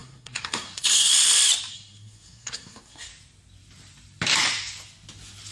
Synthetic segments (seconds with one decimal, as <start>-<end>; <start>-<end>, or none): 0.0-1.1; 1.7-3.1